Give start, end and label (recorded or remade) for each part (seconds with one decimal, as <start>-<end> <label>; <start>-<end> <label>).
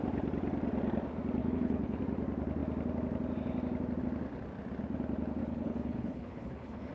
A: 0.0-1.4 recorded; 1.4-2.0 remade; 2.0-5.4 recorded; 5.4-6.9 remade